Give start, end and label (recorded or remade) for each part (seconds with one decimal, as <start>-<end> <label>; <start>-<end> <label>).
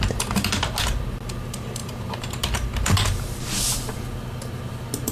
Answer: 0.0-5.1 recorded